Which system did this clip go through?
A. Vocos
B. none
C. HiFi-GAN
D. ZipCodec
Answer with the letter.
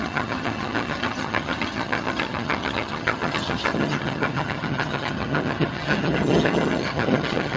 C